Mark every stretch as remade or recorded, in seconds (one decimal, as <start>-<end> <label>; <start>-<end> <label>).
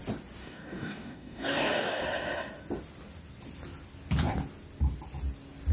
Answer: 0.0-0.4 recorded; 0.4-2.0 remade; 2.0-5.7 recorded